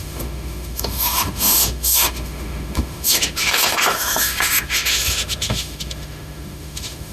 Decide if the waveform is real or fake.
fake